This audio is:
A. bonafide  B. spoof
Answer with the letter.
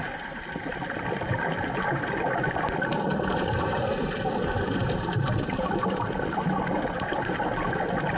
B